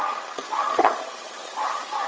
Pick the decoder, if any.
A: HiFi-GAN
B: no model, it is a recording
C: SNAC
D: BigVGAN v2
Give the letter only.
A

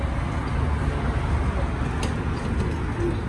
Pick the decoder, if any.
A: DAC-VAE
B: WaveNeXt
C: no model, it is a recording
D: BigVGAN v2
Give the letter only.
C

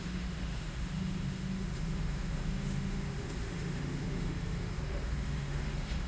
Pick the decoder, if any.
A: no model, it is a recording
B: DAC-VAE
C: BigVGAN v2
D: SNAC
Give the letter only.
B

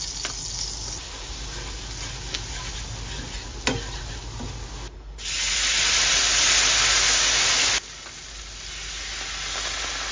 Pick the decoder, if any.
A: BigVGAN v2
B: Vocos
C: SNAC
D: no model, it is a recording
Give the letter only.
D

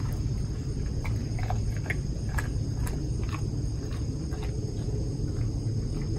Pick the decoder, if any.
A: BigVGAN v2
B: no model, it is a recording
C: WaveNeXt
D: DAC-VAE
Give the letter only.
B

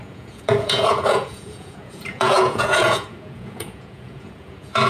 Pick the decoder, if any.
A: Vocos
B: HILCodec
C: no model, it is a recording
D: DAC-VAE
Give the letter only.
A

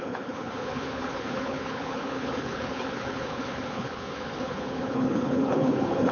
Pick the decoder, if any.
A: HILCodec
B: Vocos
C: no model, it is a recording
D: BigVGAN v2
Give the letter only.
A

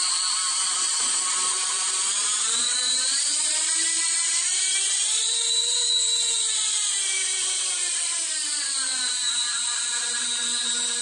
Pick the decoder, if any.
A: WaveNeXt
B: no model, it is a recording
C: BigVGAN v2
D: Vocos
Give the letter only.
C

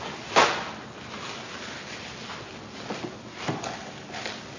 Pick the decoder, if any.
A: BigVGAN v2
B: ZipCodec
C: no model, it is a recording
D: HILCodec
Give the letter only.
C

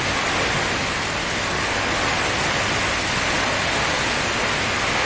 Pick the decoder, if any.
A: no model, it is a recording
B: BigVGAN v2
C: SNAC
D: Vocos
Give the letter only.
A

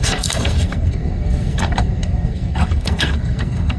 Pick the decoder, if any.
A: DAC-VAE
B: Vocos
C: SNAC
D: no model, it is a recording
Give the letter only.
C